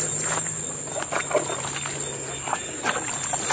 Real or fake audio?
real